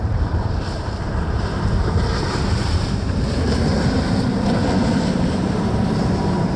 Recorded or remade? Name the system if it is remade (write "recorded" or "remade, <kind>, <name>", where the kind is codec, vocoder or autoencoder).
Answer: remade, vocoder, BigVGAN v2